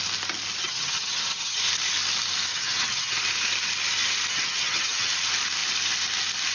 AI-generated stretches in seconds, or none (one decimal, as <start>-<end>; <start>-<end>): 0.6-1.6; 2.5-3.2; 4.3-5.1